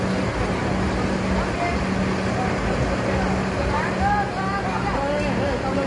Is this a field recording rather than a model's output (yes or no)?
yes